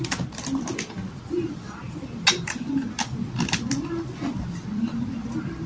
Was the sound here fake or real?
real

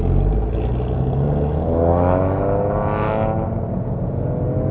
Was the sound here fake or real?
real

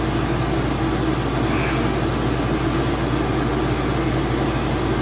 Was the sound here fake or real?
real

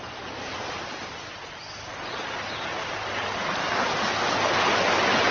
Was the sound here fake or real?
real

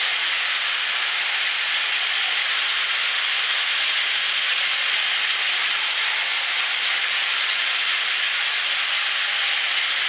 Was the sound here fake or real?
real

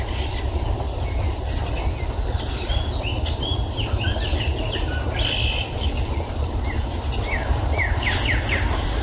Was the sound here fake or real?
real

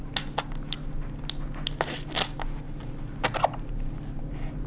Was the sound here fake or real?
real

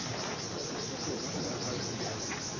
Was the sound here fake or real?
real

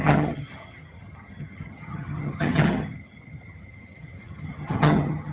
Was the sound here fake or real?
fake